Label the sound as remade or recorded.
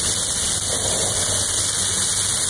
recorded